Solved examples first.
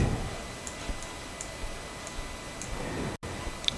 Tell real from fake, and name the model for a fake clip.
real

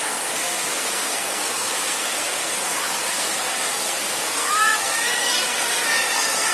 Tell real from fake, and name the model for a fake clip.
fake, codec, SNAC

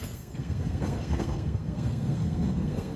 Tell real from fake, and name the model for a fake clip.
fake, codec, SNAC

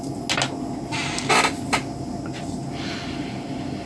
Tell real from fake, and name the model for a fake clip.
real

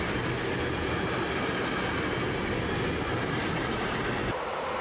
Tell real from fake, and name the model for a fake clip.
real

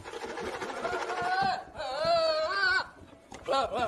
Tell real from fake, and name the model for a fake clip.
real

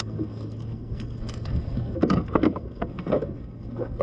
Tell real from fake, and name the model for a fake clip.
fake, codec, SNAC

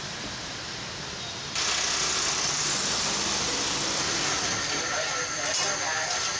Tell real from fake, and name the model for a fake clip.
real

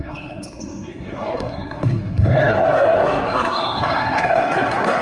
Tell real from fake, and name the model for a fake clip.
fake, codec, SNAC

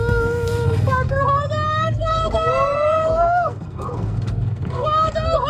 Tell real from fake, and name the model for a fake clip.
fake, codec, SNAC